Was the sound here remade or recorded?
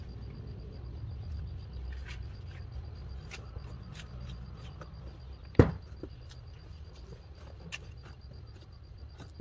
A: recorded